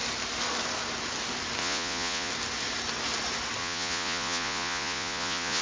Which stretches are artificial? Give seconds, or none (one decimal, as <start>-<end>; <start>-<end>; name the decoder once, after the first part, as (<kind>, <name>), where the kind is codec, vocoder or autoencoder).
1.6-2.3 (vocoder, Vocos); 3.6-5.6